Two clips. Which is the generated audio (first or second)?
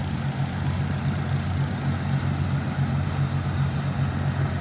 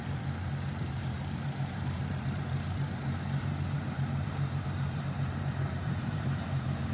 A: second